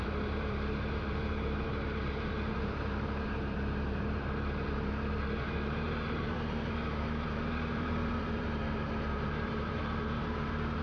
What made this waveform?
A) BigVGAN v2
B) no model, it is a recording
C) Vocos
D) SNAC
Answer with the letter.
A